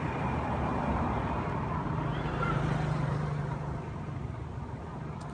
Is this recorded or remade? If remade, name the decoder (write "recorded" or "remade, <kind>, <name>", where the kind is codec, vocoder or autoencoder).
remade, vocoder, BigVGAN v2